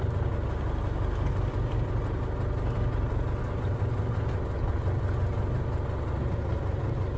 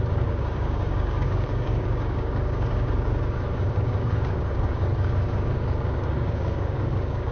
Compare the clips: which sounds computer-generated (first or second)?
second